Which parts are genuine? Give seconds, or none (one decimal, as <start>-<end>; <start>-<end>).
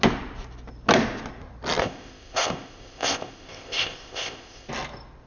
0.0-1.8; 4.7-5.3